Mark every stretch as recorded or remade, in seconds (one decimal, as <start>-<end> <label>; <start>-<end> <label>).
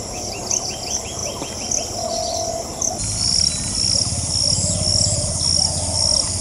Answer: 0.0-6.4 recorded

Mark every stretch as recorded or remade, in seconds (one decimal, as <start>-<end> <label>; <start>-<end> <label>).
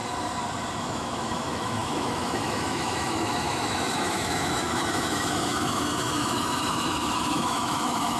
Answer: 0.0-0.8 recorded; 0.8-8.2 remade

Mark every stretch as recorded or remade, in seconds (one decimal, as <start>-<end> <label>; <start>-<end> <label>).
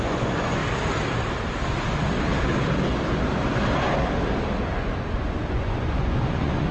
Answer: 0.0-0.6 remade; 0.6-4.6 recorded; 4.6-6.7 remade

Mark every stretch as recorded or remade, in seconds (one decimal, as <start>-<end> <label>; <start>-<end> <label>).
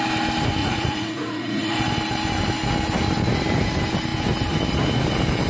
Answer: 0.0-0.6 recorded; 0.6-1.8 remade; 1.8-5.5 recorded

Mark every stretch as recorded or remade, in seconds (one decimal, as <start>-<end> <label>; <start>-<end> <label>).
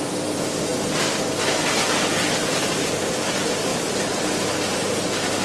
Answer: 0.0-5.4 recorded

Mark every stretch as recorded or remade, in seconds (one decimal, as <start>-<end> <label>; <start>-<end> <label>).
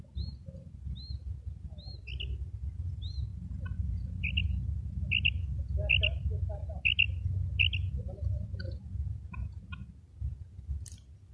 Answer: 0.0-11.3 recorded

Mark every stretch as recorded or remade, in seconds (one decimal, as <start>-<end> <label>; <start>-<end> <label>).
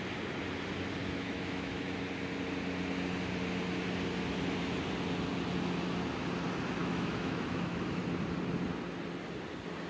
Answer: 0.0-1.0 recorded; 1.0-2.0 remade; 2.0-6.8 recorded; 6.8-8.0 remade; 8.0-9.9 recorded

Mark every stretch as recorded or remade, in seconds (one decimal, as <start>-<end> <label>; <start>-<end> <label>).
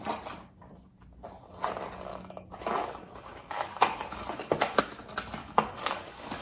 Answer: 0.0-2.1 recorded; 2.1-4.8 remade; 4.8-5.4 recorded; 5.4-6.4 remade